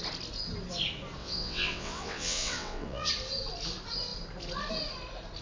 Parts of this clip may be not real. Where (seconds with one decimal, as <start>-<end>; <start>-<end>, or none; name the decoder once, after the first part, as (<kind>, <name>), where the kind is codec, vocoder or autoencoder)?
1.2-3.1 (vocoder, WaveNeXt)